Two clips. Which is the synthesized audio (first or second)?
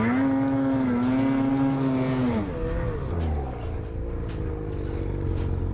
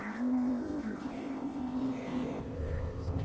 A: second